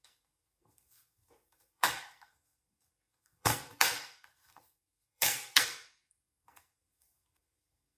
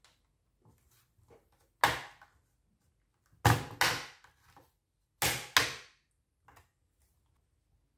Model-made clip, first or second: first